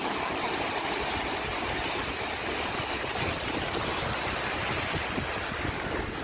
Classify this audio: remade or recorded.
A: recorded